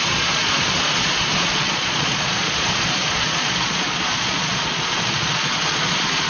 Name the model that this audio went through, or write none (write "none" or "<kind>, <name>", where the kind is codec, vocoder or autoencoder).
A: vocoder, Vocos